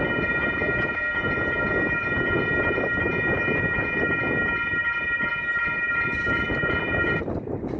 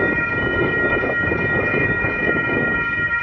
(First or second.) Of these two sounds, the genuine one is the first